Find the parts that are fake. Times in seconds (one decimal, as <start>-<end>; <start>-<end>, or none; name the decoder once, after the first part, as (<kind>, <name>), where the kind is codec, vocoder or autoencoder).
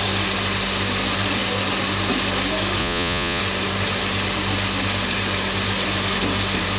2.8-3.4 (vocoder, Vocos)